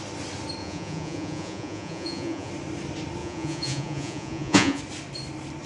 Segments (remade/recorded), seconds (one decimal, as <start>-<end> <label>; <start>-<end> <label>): 0.0-0.6 recorded; 0.6-2.5 remade; 2.5-3.2 recorded; 3.2-4.8 remade; 4.8-5.7 recorded